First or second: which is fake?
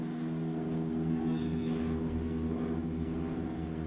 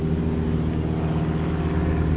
first